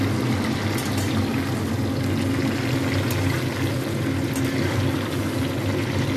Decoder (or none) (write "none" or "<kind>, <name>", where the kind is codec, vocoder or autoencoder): none